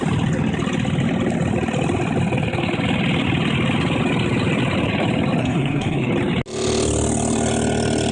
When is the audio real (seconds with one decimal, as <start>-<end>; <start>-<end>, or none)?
0.0-5.4; 6.1-8.1